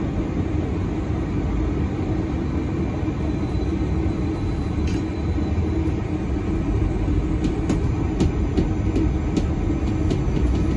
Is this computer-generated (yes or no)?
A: no